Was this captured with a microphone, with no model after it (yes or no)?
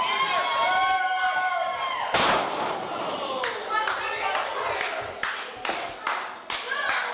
yes